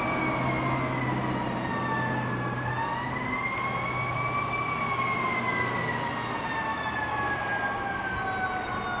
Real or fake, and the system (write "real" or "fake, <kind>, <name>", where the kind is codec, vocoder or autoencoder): real